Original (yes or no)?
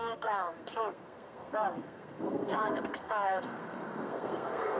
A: no